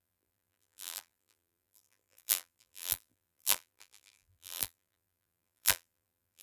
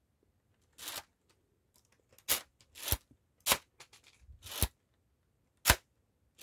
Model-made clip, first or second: first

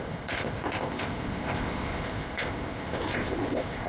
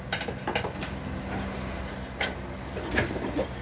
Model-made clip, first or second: first